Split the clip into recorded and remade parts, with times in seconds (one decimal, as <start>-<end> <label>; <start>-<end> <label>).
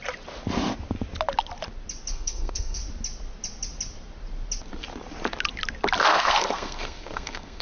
0.0-2.1 recorded; 2.1-2.8 remade; 2.8-6.0 recorded; 6.0-7.6 remade